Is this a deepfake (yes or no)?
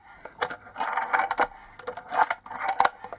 no